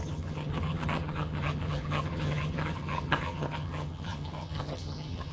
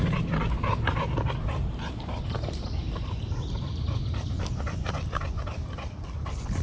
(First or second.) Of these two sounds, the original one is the second